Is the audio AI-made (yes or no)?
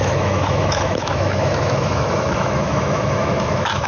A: yes